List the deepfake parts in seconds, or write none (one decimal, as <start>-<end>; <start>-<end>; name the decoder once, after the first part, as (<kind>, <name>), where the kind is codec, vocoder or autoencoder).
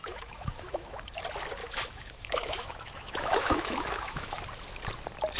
0.0-1.2 (autoencoder, DAC-VAE); 1.6-4.4